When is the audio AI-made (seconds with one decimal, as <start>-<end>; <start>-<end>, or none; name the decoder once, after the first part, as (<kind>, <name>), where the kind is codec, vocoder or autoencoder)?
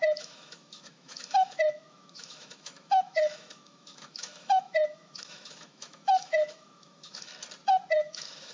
0.0-7.3 (autoencoder, DAC-VAE); 7.9-8.5